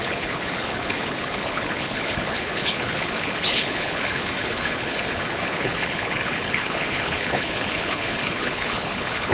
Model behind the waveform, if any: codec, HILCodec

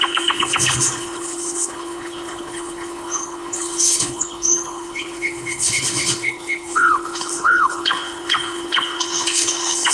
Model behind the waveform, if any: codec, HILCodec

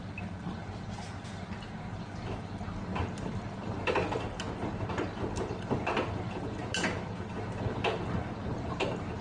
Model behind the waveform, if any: none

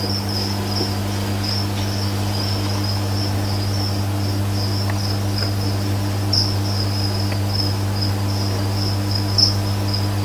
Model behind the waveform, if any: vocoder, BigVGAN v2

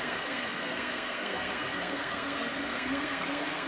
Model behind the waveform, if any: codec, SNAC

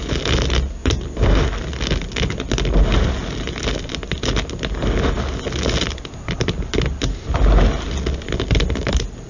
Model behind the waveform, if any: none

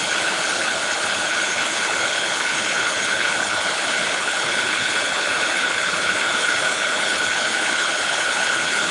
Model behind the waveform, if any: codec, HILCodec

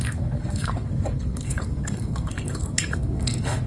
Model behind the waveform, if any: codec, SNAC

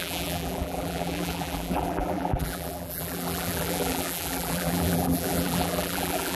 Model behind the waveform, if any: vocoder, BigVGAN v2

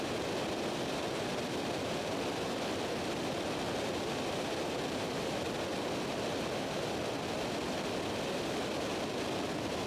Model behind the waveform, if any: none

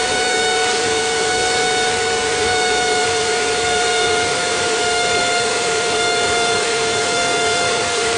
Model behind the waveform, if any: codec, DAC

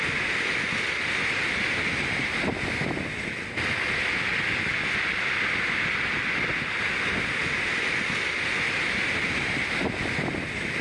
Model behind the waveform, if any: none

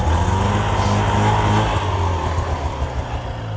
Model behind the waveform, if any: none